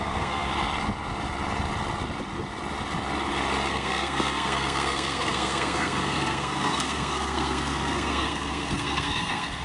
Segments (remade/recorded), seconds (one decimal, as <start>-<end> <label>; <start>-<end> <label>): 0.0-0.5 remade; 0.5-3.7 recorded; 3.7-9.6 remade